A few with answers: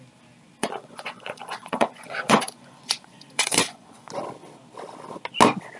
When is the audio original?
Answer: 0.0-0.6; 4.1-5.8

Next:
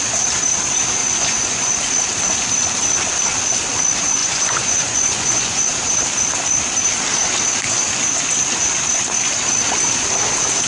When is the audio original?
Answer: 0.0-1.0; 2.0-4.2; 5.7-10.7